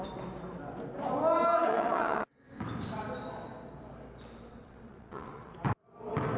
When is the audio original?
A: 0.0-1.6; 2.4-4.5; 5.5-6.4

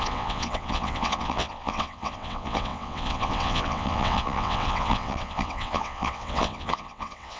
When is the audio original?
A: none

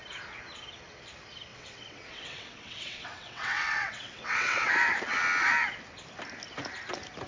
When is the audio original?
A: 0.0-1.5; 4.7-7.3

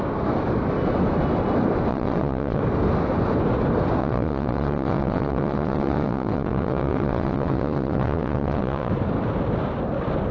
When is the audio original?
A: 0.0-1.9; 2.6-4.0; 8.9-10.3

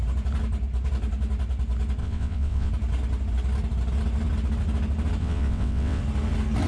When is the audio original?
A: 0.0-2.0; 2.7-5.2; 6.0-6.7

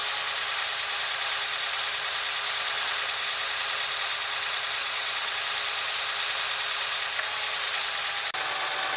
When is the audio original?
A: 0.0-4.8; 5.4-9.0

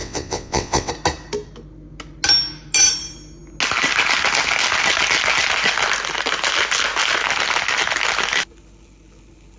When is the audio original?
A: 0.9-9.6

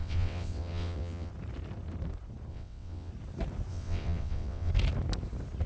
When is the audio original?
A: 1.3-2.5; 3.1-3.7; 4.7-5.7